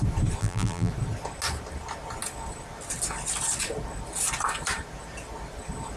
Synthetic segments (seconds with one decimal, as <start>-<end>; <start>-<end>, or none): 0.4-0.9